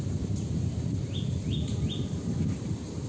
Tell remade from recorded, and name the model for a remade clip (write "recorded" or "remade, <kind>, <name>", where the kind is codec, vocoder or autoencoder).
remade, vocoder, BigVGAN v2